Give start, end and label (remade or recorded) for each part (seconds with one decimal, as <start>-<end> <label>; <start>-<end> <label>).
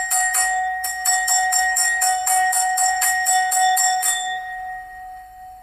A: 0.0-5.6 remade